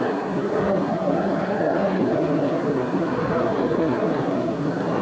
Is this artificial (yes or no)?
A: yes